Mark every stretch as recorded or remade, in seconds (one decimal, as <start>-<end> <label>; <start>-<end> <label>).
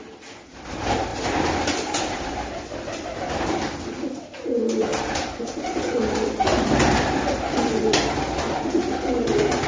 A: 0.0-1.1 recorded; 1.1-3.4 remade; 3.4-4.9 recorded; 4.9-5.8 remade; 5.8-6.5 recorded; 6.5-7.1 remade; 7.1-9.7 recorded